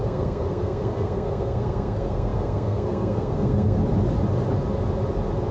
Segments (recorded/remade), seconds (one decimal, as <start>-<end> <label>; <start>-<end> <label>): 0.0-3.8 remade; 3.8-5.5 recorded